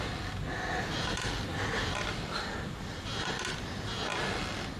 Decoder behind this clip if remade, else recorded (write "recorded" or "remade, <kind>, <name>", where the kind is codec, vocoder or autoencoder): remade, vocoder, BigVGAN v2